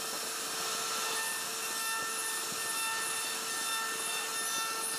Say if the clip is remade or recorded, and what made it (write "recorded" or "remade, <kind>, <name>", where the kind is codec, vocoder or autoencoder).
recorded